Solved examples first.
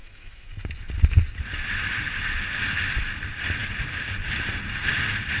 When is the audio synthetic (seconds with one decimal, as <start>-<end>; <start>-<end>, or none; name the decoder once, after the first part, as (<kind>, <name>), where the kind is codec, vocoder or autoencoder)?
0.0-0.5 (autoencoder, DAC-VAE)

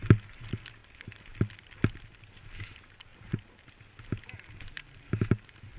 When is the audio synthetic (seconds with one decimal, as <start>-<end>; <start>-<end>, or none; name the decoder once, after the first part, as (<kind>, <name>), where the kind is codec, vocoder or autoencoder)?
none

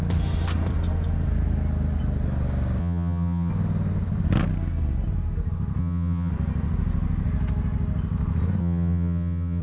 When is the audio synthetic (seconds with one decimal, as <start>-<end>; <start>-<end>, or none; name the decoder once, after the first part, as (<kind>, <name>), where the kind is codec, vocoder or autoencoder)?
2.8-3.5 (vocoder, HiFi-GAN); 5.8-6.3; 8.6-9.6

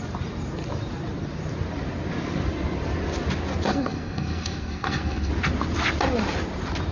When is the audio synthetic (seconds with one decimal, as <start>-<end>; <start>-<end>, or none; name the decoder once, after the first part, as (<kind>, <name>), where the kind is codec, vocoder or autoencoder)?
3.7-5.3 (codec, SNAC)